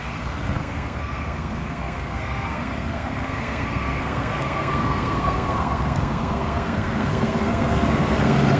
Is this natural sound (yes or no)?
no